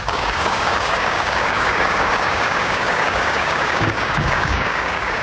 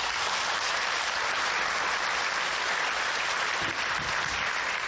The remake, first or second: first